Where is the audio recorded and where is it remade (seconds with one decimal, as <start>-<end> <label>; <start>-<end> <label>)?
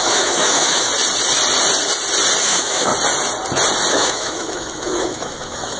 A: 0.0-0.9 remade; 0.9-2.4 recorded; 2.4-2.9 remade; 2.9-3.9 recorded; 3.9-5.8 remade